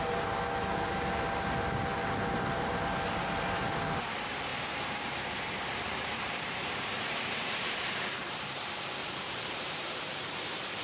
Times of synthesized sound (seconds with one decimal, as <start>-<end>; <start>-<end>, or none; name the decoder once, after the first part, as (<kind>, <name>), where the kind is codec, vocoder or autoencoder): 4.5-8.4 (vocoder, BigVGAN v2); 9.0-10.3